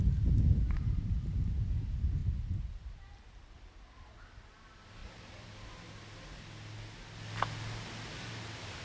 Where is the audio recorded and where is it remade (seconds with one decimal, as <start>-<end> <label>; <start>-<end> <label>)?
0.0-5.0 recorded; 5.0-6.0 remade; 6.0-8.8 recorded